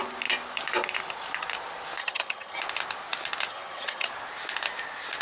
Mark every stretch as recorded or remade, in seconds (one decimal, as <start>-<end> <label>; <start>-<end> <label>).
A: 0.0-2.0 recorded; 2.0-2.6 remade; 2.6-3.5 recorded; 3.5-4.1 remade; 4.1-5.2 recorded